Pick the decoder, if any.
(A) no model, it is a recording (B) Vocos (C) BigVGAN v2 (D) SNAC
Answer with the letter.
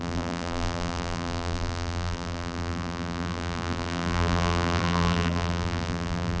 C